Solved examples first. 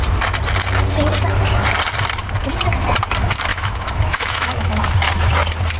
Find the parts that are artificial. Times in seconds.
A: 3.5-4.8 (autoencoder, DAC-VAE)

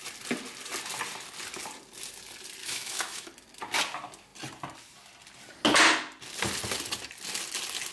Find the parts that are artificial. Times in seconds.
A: 2.6-3.3 (autoencoder, DAC-VAE)